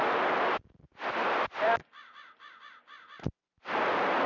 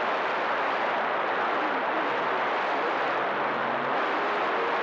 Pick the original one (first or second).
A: second